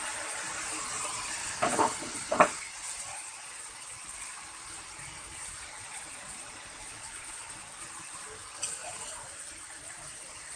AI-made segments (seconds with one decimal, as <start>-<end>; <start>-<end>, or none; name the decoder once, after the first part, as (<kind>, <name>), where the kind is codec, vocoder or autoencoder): 1.4-2.7 (codec, HILCodec); 6.9-7.5